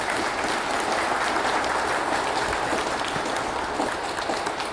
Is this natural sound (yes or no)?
yes